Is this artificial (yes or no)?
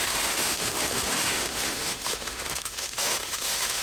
yes